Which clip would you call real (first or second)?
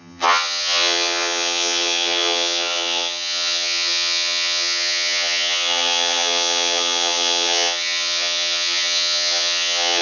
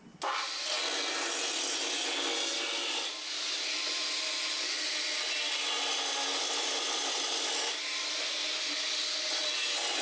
second